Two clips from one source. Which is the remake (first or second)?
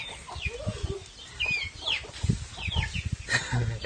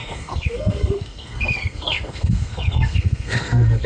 second